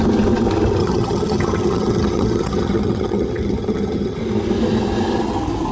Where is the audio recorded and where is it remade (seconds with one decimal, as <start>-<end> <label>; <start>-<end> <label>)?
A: 0.0-0.8 recorded; 0.8-4.2 remade; 4.2-5.7 recorded